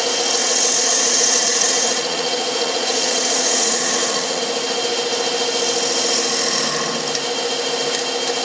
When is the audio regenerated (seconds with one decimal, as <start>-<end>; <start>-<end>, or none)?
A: 0.4-4.4